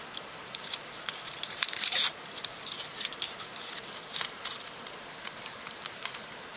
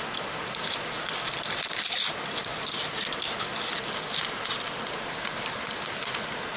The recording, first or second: second